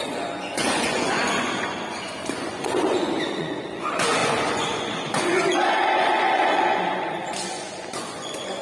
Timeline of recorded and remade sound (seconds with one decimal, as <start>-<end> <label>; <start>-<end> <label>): 0.0-8.6 remade